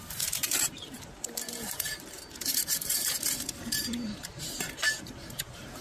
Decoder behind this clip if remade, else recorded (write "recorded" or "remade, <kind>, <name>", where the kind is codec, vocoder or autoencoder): remade, vocoder, BigVGAN v2